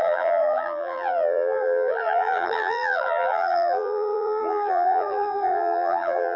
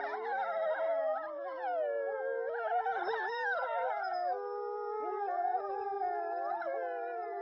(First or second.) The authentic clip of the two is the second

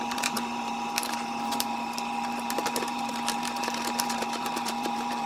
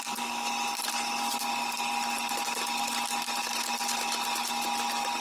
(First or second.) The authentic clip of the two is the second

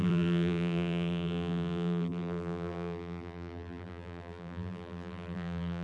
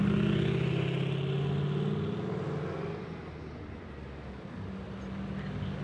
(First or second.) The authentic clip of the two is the second